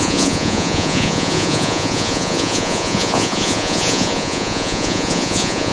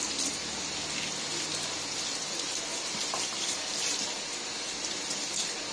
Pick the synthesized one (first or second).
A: first